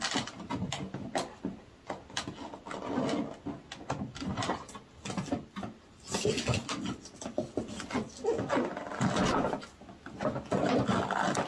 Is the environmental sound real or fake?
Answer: real